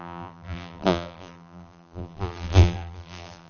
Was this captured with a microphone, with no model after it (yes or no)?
no